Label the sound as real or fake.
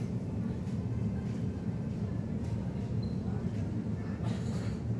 real